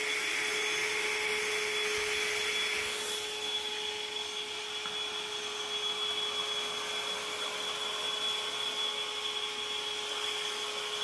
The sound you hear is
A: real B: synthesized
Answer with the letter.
A